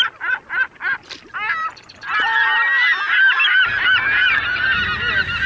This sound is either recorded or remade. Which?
recorded